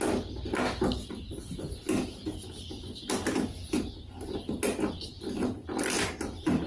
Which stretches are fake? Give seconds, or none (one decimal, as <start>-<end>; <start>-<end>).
none